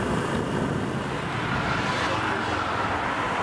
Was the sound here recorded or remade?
recorded